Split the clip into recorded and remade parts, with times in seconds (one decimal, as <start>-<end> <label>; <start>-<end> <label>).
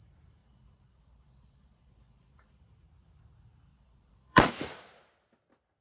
0.0-0.4 recorded; 0.4-2.6 remade; 2.6-3.7 recorded; 3.7-4.5 remade; 4.5-5.8 recorded